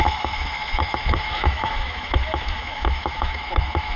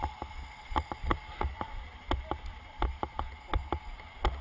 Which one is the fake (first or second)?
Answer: first